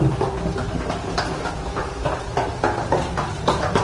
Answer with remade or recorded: recorded